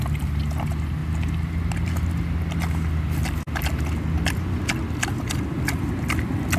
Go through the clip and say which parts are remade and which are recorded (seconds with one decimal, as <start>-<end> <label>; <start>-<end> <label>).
0.0-6.6 recorded